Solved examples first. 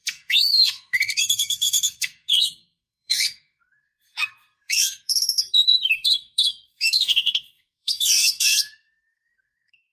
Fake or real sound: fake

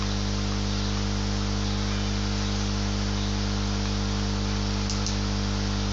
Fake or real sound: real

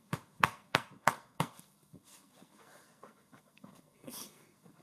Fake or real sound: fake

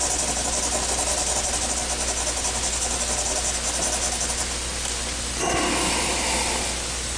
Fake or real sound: real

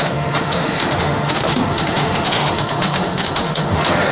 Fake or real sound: fake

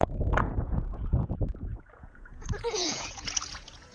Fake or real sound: fake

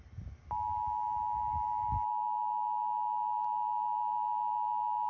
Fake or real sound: real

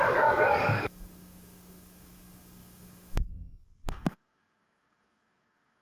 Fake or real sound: fake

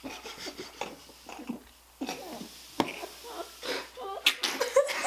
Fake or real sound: real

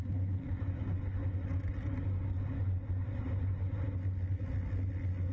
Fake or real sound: real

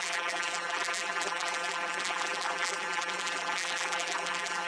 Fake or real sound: fake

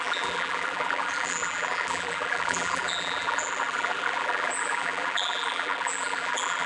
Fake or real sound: fake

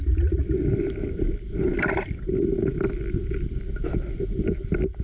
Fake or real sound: real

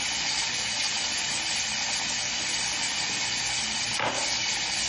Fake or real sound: real